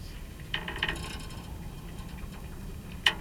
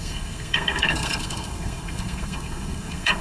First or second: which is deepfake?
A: second